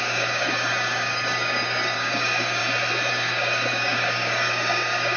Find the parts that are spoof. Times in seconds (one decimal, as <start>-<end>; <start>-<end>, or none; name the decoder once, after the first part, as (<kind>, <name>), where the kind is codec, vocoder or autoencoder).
0.0-2.6 (codec, DAC); 3.1-5.2